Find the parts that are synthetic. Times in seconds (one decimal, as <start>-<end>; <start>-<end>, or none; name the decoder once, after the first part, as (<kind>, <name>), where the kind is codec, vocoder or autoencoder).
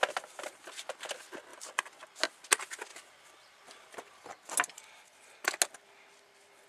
1.5-2.1 (vocoder, BigVGAN v2); 2.9-4.3